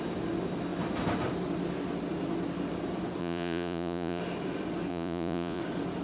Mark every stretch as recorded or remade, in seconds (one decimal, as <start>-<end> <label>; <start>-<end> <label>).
0.0-3.2 recorded; 3.2-4.2 remade; 4.2-4.9 recorded; 4.9-5.6 remade; 5.6-6.0 recorded